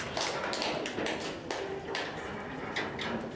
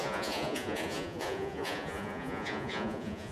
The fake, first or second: second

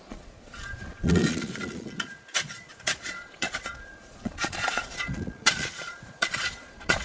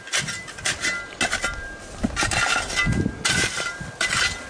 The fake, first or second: first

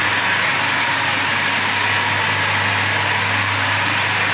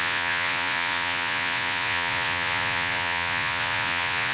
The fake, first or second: second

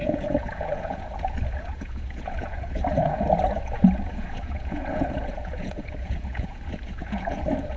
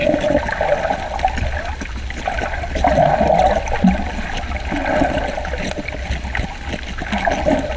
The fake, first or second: first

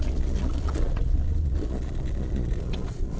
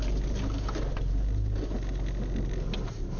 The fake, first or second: first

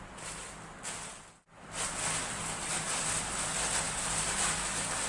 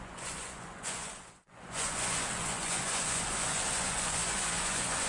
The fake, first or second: second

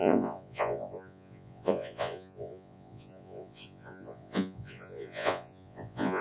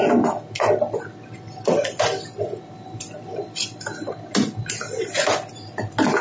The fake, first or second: first